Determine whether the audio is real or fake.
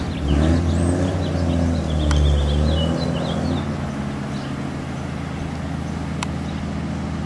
real